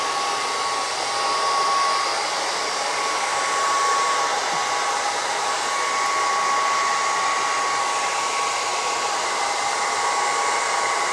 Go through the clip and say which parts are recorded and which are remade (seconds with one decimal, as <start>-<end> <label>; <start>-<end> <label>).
0.0-11.1 recorded